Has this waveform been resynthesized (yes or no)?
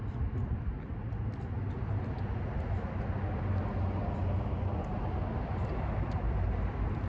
no